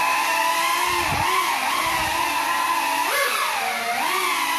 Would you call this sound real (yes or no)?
yes